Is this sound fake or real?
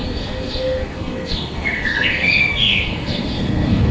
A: fake